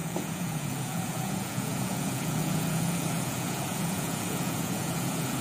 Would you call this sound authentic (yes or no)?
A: no